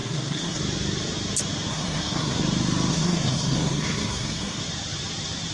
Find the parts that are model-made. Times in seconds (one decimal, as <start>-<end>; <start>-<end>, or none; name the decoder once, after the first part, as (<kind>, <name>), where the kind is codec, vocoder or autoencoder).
0.0-0.6 (codec, SNAC); 1.7-2.4; 2.9-4.6